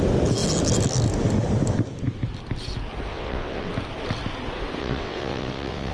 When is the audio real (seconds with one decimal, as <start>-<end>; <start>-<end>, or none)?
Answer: 0.0-3.1; 3.7-4.8